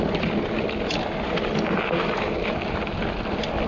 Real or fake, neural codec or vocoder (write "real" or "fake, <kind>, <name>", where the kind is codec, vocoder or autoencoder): real